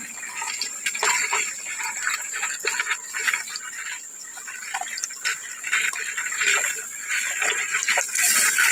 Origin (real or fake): real